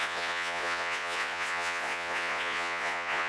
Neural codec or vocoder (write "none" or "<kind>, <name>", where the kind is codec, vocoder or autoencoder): vocoder, Vocos